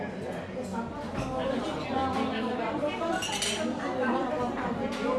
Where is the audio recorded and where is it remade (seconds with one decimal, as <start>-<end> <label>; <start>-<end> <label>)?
0.0-5.2 recorded